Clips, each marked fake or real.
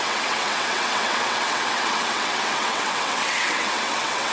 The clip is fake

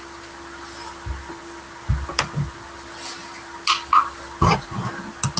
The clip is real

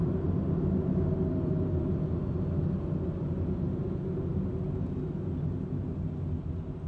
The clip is real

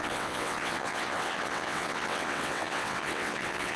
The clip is fake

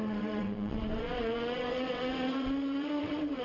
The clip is fake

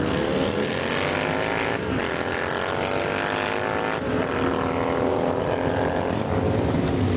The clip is real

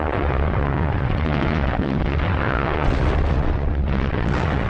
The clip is fake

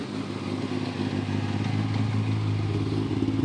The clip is real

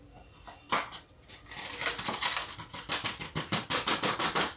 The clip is real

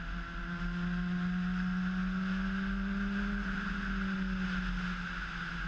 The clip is real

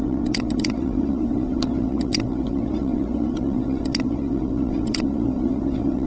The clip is fake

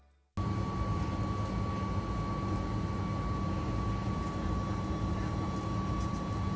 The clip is real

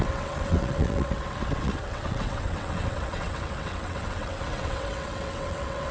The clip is fake